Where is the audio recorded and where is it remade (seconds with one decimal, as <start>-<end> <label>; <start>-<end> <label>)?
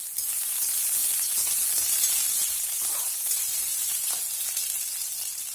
0.0-1.0 recorded; 1.0-4.2 remade; 4.2-5.5 recorded